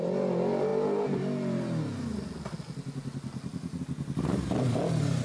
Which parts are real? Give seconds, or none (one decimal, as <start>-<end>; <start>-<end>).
0.0-5.2